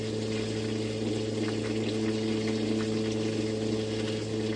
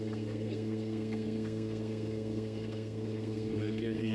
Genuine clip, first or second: first